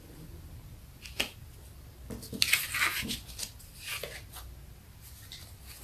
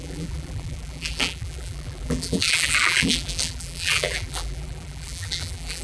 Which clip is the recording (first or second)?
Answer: first